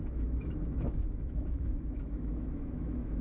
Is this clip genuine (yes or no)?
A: no